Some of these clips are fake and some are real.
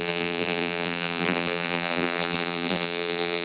fake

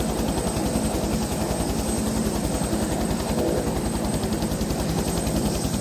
fake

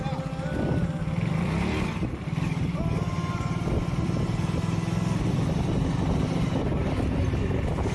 real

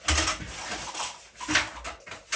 real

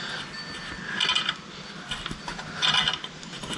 real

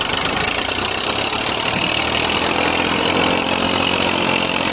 real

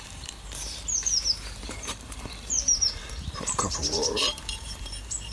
fake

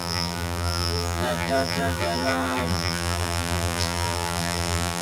fake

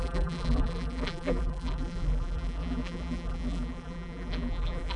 fake